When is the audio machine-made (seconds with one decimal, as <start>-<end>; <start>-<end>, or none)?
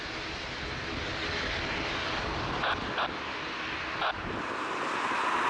none